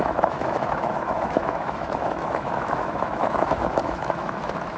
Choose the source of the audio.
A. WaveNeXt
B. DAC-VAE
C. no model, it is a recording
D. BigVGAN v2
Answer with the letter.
B